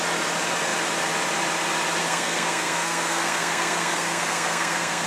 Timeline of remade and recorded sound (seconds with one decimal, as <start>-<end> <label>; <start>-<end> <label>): 0.0-2.0 recorded; 2.0-5.1 remade